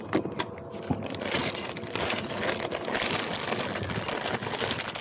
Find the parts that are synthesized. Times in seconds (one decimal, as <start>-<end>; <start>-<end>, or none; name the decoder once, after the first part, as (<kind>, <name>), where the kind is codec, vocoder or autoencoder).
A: none